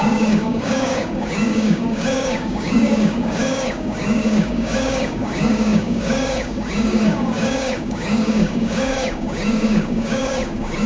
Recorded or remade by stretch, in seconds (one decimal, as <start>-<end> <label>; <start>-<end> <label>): 0.0-10.9 remade